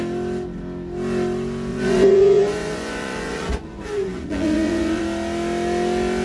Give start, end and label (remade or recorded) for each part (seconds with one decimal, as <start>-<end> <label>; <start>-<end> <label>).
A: 0.0-1.7 recorded; 1.7-5.0 remade; 5.0-6.2 recorded